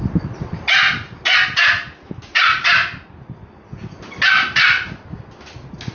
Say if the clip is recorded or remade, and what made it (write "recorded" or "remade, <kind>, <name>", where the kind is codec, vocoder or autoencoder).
recorded